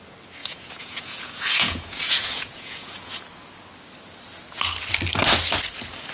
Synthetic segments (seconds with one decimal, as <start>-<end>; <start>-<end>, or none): 0.4-3.2